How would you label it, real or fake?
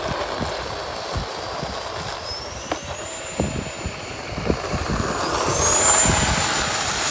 real